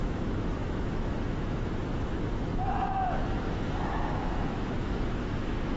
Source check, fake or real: fake